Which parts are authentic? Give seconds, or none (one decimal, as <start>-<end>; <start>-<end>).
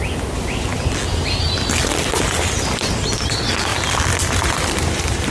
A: 0.0-3.7; 4.7-5.3